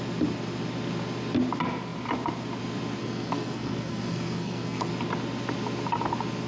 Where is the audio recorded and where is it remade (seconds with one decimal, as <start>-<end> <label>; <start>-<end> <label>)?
0.0-3.0 recorded; 3.0-4.9 remade; 4.9-6.5 recorded